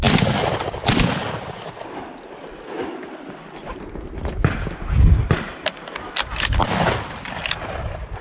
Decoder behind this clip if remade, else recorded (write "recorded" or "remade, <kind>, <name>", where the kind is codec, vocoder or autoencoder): recorded